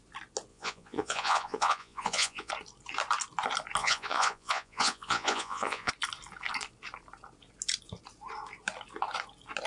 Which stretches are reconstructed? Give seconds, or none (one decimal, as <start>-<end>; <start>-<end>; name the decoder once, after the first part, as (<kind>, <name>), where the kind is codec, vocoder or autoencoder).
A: 0.5-2.5 (vocoder, Vocos); 3.8-5.9

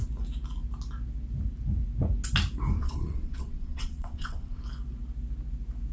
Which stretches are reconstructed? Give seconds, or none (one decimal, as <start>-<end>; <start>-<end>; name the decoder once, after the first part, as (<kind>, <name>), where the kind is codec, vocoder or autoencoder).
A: 2.8-4.6 (vocoder, WaveNeXt)

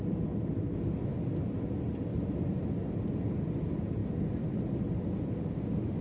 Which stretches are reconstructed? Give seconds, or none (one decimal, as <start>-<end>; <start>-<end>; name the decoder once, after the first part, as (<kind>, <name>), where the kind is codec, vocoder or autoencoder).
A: none

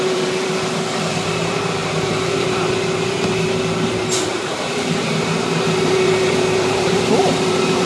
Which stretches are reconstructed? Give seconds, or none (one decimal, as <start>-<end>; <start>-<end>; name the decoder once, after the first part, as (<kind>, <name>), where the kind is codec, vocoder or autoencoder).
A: 0.0-7.9 (vocoder, BigVGAN v2)

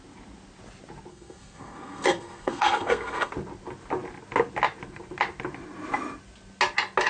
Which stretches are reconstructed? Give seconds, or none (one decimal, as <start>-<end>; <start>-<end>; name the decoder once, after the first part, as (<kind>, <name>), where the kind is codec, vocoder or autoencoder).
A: 1.1-3.3 (codec, SNAC)

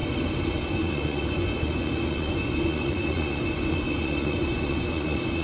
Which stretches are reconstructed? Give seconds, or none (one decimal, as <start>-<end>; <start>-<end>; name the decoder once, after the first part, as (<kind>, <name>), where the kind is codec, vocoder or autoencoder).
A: 0.5-5.4 (vocoder, Vocos)

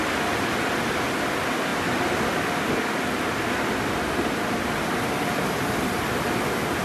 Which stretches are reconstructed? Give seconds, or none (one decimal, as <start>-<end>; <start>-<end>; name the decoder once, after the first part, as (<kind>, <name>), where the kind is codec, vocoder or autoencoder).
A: none

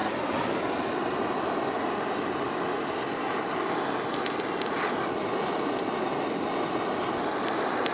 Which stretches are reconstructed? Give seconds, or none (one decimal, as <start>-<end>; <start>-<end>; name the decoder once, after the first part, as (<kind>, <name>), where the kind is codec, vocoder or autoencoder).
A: none